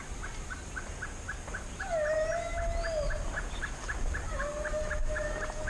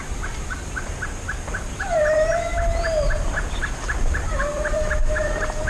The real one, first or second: first